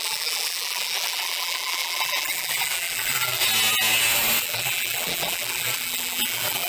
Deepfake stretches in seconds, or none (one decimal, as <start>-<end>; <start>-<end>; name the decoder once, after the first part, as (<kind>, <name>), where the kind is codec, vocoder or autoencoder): 0.0-3.4 (vocoder, BigVGAN v2); 4.4-6.7